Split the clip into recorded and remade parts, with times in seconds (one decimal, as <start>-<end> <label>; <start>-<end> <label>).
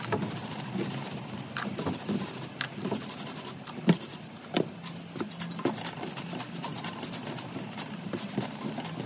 0.0-9.1 recorded